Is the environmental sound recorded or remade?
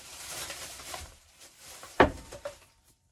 remade